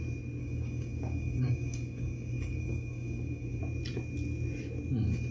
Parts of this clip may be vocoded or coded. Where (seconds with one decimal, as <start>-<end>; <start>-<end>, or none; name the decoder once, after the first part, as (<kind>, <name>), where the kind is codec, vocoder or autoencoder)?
0.4-3.6 (codec, DAC)